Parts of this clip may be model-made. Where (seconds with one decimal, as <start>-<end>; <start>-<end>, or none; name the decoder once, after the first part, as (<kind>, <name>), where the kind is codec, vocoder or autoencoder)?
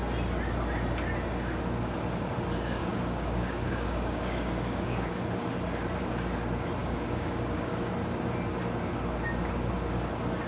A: 2.8-5.1 (codec, DAC); 6.8-7.9